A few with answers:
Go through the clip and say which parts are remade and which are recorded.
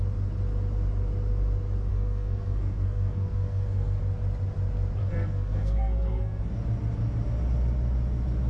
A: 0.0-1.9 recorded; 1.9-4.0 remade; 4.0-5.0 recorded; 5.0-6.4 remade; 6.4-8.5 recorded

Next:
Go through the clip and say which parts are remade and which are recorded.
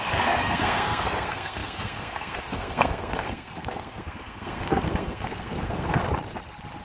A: 0.0-6.0 remade; 6.0-6.8 recorded